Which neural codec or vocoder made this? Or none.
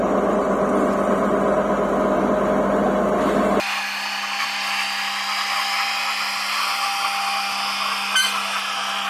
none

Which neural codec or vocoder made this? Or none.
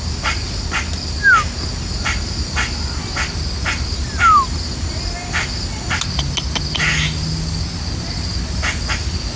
none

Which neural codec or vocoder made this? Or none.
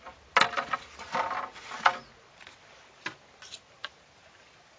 none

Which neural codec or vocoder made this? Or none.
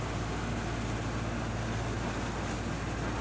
none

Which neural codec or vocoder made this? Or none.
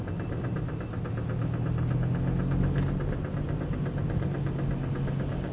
none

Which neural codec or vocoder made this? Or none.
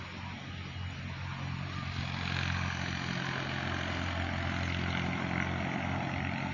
none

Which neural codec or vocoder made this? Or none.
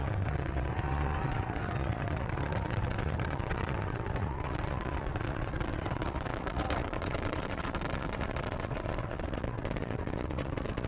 vocoder, WaveNeXt